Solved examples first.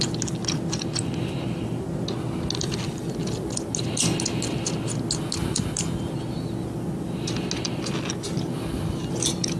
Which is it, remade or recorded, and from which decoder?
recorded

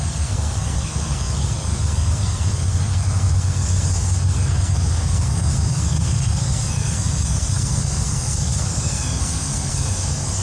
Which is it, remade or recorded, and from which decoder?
remade, codec, SNAC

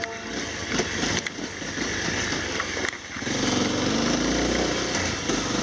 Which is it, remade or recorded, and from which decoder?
recorded